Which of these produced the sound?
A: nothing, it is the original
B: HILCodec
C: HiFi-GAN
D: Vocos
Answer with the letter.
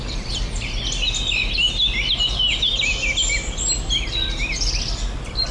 A